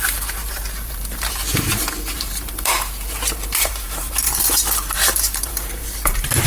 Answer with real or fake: fake